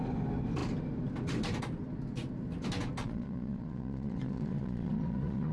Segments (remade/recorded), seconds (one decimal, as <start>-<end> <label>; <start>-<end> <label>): 0.0-3.0 recorded; 3.0-5.5 remade